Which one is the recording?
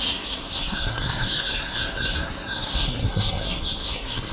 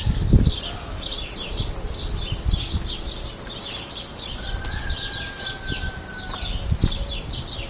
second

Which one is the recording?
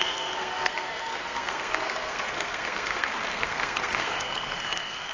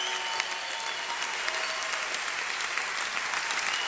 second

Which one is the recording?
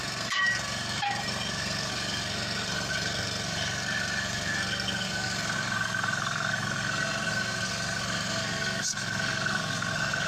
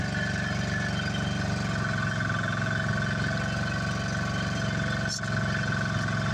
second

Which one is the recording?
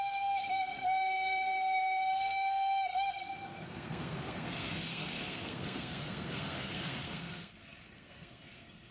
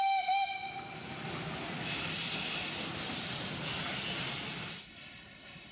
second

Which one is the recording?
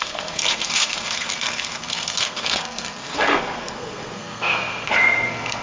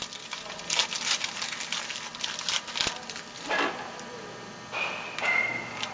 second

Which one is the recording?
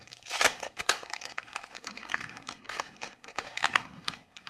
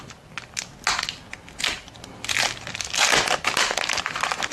second